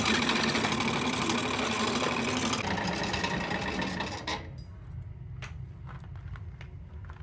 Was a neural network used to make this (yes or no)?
no